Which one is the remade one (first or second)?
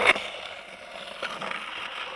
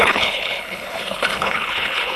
second